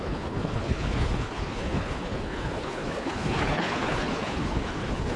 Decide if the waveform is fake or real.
fake